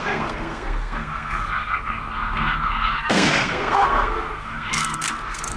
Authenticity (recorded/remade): remade